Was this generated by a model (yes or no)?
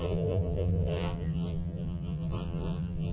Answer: yes